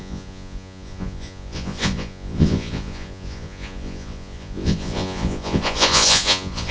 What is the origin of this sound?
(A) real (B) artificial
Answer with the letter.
B